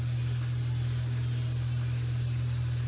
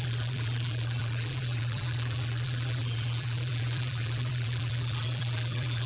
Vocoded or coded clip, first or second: second